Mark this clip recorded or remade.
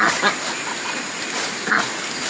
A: recorded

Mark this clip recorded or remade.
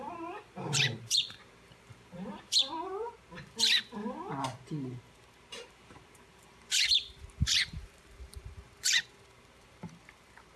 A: remade